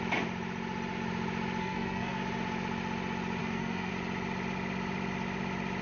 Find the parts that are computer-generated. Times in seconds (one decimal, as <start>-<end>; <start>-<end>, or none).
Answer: 1.6-2.2; 3.4-3.9